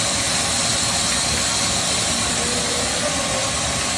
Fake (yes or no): no